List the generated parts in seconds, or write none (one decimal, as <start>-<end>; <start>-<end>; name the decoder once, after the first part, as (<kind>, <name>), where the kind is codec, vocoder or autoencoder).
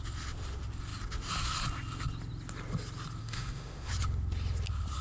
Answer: 3.2-3.9 (autoencoder, DAC-VAE)